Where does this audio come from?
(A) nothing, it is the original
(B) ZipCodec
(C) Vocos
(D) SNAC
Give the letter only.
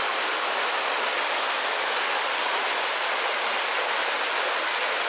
A